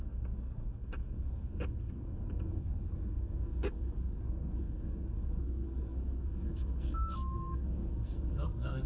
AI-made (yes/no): yes